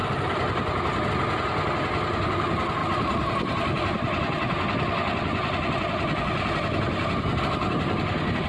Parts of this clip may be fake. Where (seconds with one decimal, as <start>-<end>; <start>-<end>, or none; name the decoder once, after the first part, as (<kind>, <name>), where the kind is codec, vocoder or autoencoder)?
none